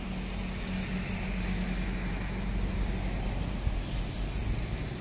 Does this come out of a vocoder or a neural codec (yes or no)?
no